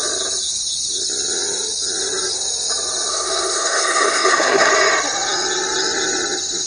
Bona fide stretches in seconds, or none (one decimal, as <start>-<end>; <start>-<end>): 0.0-3.1; 4.7-6.7